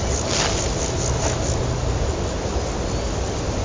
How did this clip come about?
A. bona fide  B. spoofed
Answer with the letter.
A